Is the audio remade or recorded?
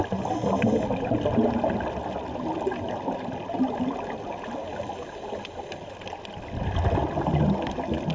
recorded